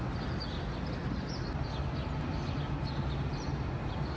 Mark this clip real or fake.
real